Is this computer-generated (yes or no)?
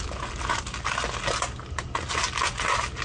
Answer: no